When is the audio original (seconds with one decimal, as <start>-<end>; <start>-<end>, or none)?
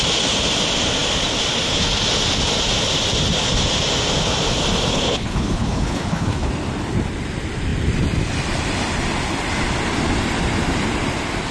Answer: 0.0-4.9; 6.5-11.5